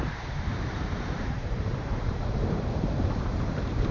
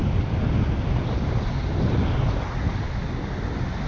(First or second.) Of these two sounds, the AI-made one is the first